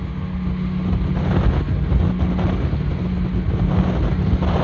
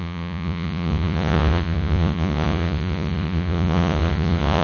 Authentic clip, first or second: first